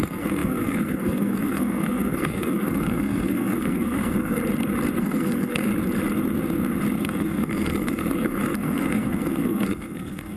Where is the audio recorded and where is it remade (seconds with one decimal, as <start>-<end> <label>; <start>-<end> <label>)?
0.0-4.4 remade; 4.4-5.0 recorded; 5.0-5.7 remade; 5.7-7.0 recorded; 7.0-10.4 remade